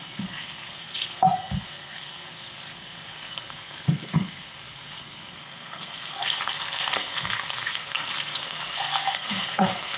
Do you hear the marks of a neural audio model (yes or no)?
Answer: yes